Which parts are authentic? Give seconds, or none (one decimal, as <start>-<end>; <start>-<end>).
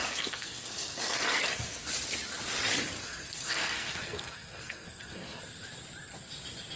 1.9-3.0; 5.4-6.8